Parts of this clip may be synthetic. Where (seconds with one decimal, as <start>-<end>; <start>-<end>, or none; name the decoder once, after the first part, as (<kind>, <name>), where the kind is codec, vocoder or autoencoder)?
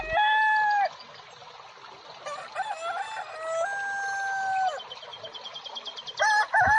none